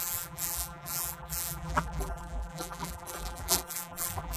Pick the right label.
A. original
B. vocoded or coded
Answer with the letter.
B